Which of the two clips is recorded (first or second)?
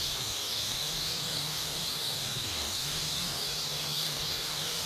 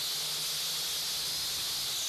second